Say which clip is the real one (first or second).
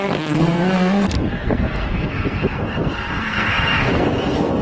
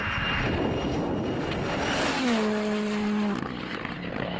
second